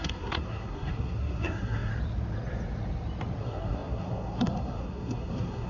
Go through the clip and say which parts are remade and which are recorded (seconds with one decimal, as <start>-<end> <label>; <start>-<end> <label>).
0.0-1.9 remade; 1.9-3.4 recorded; 3.4-5.7 remade